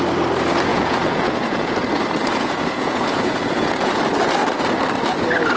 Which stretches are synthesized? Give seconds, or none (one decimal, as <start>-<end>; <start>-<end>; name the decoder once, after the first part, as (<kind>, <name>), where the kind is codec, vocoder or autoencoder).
0.7-1.8 (vocoder, Vocos); 2.2-4.0